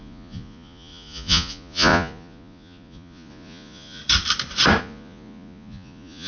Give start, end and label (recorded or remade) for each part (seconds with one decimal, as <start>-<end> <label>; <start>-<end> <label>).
0.0-4.0 remade; 4.0-4.8 recorded; 4.8-6.3 remade